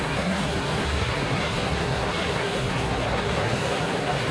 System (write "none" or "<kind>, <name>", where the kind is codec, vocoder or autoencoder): codec, SNAC